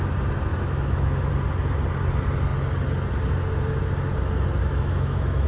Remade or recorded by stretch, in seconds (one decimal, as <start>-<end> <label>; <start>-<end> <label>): 0.0-0.5 recorded; 0.5-1.3 remade; 1.3-4.6 recorded; 4.6-5.5 remade